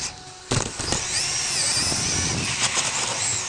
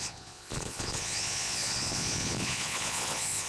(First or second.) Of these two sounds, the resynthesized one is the second